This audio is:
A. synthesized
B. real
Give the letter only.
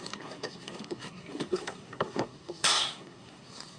A